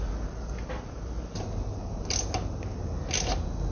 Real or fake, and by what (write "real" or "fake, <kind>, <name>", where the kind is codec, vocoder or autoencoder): real